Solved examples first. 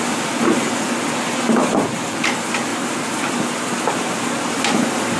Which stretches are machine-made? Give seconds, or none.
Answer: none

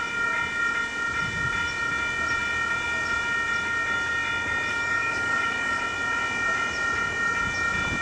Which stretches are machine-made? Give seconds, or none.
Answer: 4.7-5.8

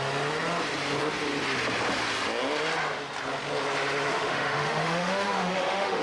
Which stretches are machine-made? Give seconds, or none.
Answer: 4.1-6.0

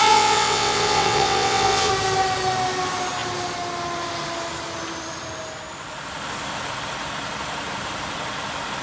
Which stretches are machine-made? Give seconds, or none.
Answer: 0.0-1.9

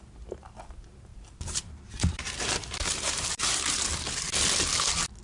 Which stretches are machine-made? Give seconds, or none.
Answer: 1.1-3.9

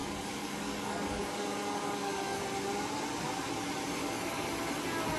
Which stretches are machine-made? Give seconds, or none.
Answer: 0.0-2.4; 4.0-4.5

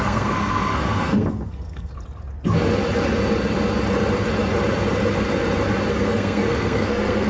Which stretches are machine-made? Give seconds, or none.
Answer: 0.0-1.9; 5.9-7.3